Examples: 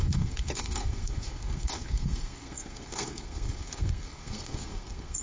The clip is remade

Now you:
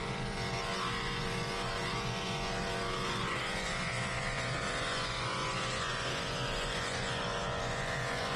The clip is remade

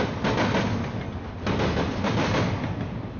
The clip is recorded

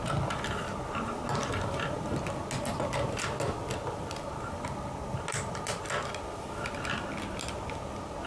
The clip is recorded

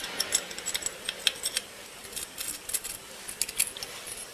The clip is recorded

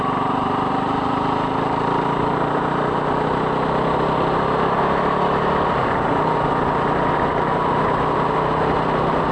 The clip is recorded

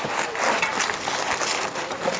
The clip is recorded